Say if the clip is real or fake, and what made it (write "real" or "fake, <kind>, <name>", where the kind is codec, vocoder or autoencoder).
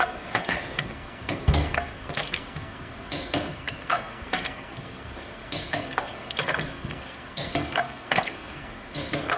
fake, codec, SNAC